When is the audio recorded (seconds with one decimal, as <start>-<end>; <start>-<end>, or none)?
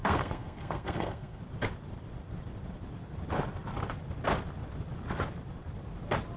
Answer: 1.4-6.4